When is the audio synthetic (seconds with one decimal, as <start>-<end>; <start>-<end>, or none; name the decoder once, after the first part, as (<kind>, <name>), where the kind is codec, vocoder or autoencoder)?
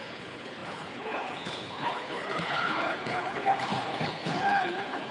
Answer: 0.0-5.1 (codec, HILCodec)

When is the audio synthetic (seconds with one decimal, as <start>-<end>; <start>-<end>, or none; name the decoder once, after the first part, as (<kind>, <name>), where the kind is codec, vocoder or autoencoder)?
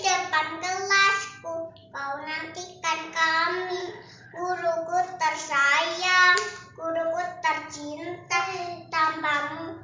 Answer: 3.8-4.4 (codec, HILCodec)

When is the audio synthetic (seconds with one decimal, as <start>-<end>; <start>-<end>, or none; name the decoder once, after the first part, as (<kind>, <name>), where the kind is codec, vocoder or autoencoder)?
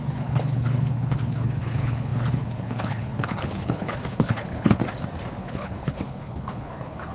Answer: 0.0-4.8 (codec, HILCodec); 5.4-7.1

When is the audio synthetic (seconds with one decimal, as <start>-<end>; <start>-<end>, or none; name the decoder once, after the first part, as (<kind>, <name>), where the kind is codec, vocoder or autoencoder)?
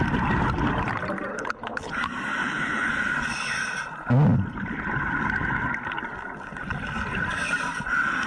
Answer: 1.3-1.9 (codec, HILCodec); 2.4-2.9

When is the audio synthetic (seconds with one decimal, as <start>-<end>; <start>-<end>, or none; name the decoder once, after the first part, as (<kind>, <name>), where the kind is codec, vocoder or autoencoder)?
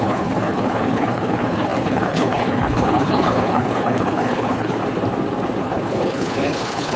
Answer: 0.0-4.8 (codec, HILCodec); 5.6-7.0